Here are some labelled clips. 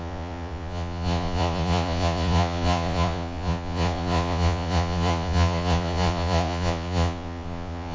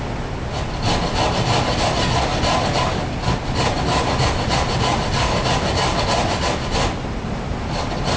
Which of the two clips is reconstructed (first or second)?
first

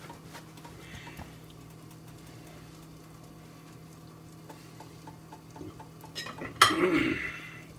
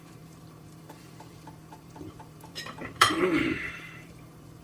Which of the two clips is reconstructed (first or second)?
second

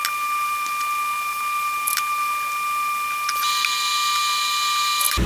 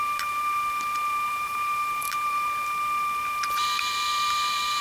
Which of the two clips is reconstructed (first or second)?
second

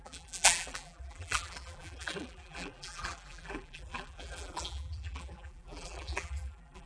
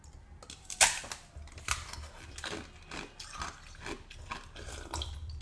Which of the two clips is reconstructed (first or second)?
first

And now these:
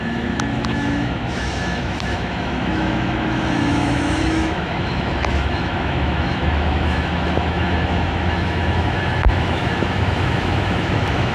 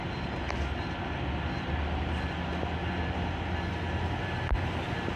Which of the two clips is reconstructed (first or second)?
first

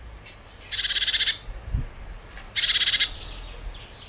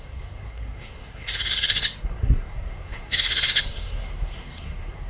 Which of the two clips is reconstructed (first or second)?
second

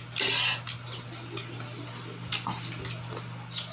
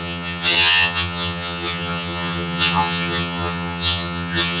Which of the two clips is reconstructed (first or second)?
second